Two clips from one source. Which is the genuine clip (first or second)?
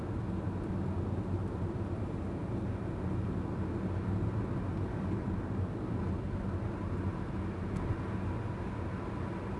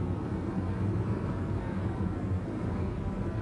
first